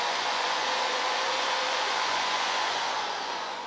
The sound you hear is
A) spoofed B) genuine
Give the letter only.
A